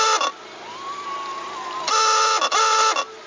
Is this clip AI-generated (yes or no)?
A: no